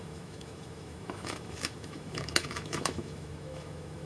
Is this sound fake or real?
fake